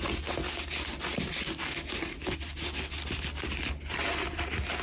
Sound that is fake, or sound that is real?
real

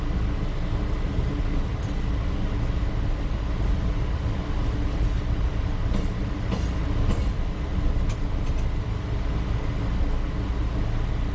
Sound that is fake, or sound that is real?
real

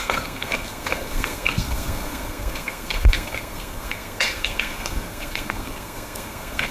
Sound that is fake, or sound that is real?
fake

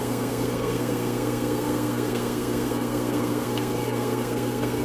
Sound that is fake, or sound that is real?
fake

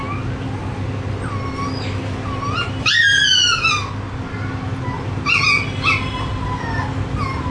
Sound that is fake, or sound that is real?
real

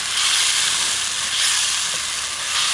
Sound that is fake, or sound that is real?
real